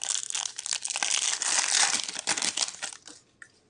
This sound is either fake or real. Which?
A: real